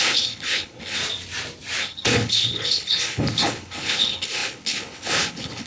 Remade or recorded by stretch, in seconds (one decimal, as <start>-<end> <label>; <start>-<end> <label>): 0.0-1.0 remade; 1.0-1.8 recorded; 1.8-5.7 remade